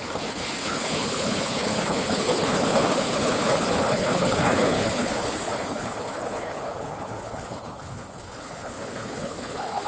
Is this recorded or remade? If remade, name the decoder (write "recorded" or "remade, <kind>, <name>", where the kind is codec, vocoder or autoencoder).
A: remade, codec, HILCodec